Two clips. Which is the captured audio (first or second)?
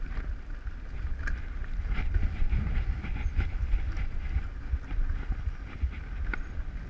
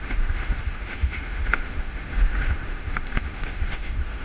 first